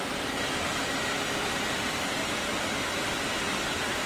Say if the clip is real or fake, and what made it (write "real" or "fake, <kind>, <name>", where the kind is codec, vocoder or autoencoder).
real